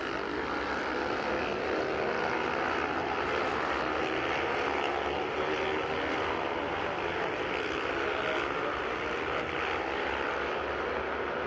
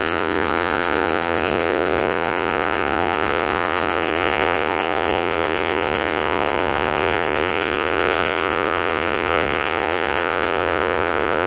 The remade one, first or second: second